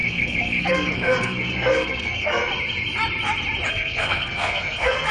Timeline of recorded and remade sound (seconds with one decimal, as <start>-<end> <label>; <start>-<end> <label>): 0.0-2.5 remade; 2.5-3.7 recorded; 3.7-5.1 remade